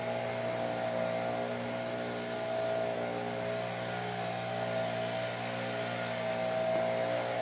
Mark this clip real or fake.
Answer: real